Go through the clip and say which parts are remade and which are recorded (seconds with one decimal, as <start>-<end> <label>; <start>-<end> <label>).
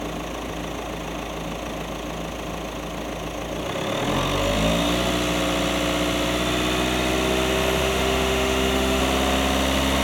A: 0.0-7.8 recorded; 7.8-9.0 remade; 9.0-10.0 recorded